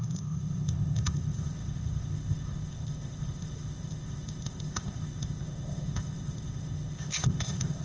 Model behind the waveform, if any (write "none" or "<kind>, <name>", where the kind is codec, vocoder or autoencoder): codec, ZipCodec